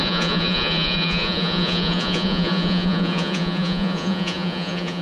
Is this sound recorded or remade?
remade